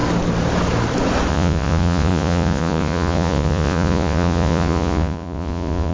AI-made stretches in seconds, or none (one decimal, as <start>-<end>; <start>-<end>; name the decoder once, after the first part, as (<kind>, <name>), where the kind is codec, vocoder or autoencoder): 1.3-5.9 (vocoder, Vocos)